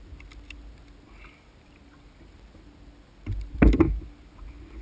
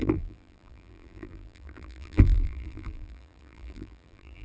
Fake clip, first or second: second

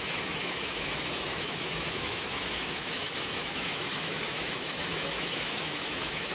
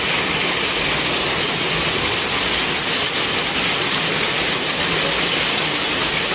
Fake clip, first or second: first